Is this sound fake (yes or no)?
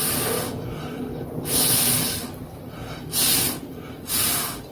no